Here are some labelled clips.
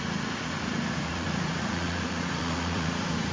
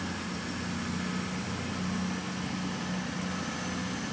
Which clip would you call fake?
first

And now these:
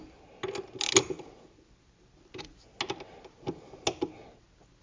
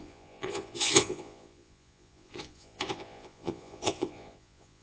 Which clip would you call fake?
second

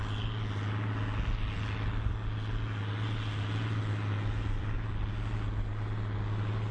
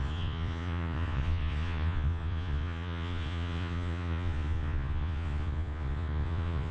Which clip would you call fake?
second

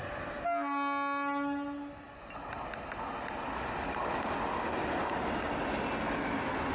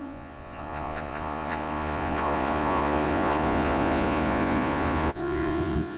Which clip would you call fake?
second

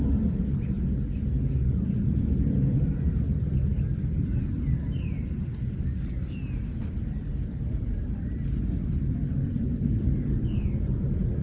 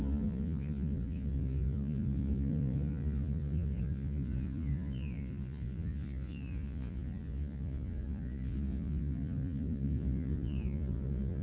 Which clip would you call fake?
second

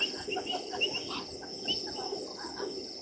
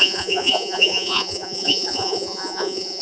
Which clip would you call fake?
second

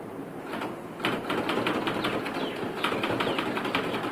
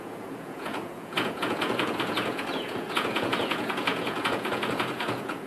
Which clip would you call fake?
second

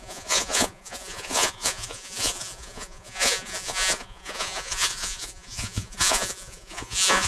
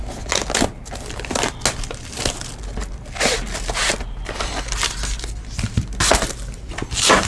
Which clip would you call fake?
first